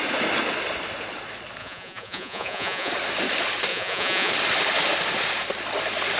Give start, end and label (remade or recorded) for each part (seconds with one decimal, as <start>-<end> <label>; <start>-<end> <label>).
0.0-1.6 recorded; 1.6-2.9 remade; 2.9-3.7 recorded; 3.7-4.3 remade; 4.3-6.2 recorded